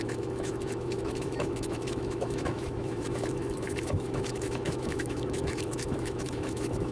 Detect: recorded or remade remade